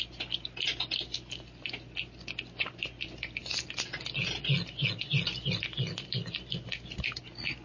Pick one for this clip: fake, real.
real